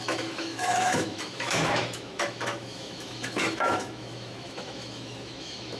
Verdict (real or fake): fake